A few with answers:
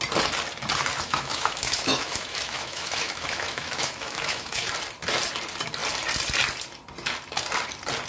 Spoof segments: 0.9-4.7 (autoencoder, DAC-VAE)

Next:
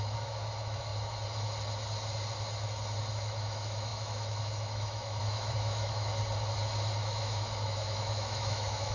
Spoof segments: 0.0-0.9 (autoencoder, DAC-VAE); 3.1-6.1; 7.0-8.9

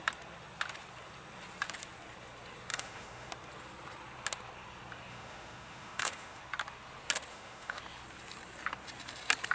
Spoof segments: 2.7-3.3 (autoencoder, DAC-VAE); 5.1-6.4; 7.3-7.8

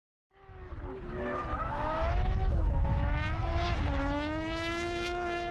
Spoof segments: 1.6-3.5 (autoencoder, DAC-VAE); 4.0-5.5

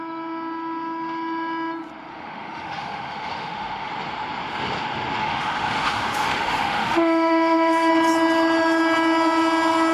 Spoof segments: 2.1-3.9 (autoencoder, DAC-VAE); 5.2-7.9

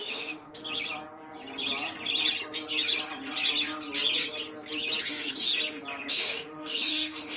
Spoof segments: 0.0-0.6 (autoencoder, DAC-VAE); 5.0-5.5; 6.1-7.4

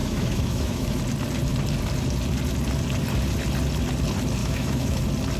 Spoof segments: 0.0-1.0 (autoencoder, DAC-VAE); 4.4-5.0

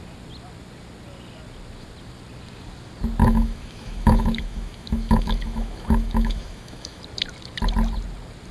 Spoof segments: 3.2-7.0 (autoencoder, DAC-VAE)